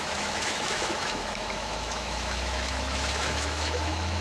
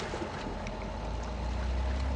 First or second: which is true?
second